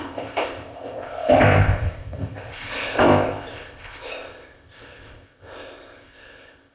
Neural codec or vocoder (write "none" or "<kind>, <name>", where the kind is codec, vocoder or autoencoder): codec, ZipCodec